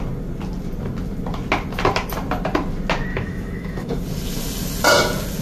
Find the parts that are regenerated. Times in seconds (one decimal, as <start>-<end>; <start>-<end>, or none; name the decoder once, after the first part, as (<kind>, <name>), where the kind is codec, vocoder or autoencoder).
3.1-4.0 (autoencoder, DAC-VAE)